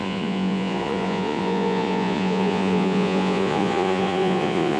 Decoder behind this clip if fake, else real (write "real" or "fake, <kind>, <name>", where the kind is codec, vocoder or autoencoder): fake, vocoder, Vocos